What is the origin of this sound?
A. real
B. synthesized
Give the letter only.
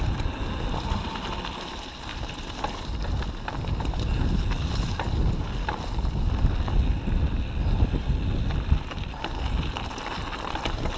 A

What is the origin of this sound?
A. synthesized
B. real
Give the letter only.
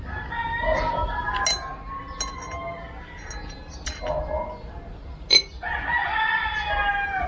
B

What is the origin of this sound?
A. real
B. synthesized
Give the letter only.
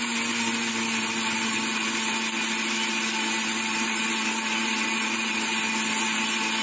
A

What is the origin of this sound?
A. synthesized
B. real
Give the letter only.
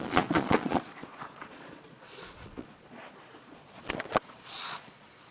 A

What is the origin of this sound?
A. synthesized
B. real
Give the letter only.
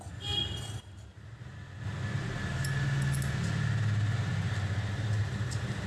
B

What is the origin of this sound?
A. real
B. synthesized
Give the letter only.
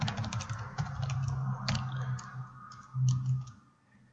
A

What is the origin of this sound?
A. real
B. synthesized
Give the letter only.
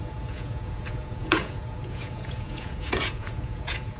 B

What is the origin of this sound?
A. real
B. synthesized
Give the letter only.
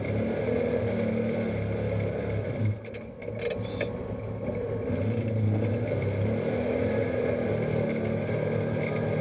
A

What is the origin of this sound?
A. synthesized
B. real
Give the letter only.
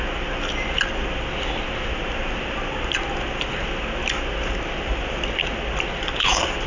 B